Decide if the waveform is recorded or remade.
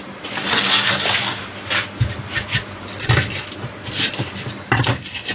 recorded